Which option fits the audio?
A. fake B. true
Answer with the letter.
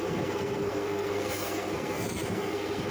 A